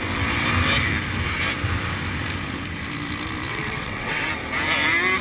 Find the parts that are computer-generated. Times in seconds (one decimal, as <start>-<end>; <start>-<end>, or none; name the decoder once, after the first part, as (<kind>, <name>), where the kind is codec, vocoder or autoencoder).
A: 3.5-4.3 (vocoder, WaveNeXt)